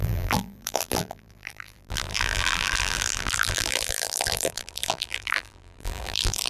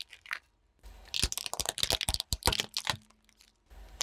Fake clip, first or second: first